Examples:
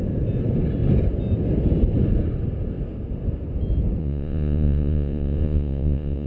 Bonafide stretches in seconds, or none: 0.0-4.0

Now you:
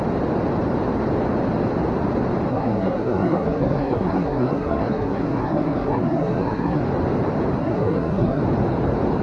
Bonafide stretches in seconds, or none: 0.0-2.5; 6.8-7.6; 8.4-9.2

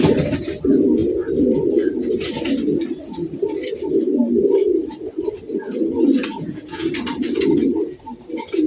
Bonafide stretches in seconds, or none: 0.0-6.3; 6.9-8.7

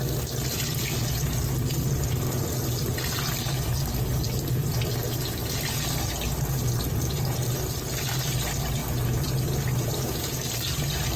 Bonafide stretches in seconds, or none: 0.0-11.2